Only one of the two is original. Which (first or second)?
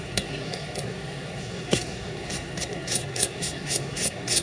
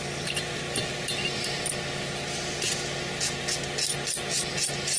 second